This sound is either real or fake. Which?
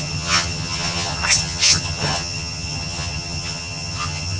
fake